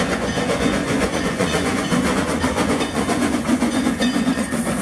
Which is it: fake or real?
fake